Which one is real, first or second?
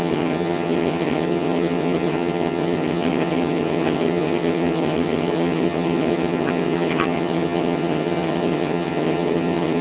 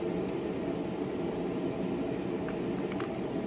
second